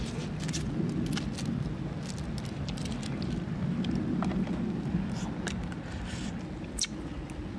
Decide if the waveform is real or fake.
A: real